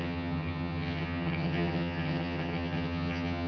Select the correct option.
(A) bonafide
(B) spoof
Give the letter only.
B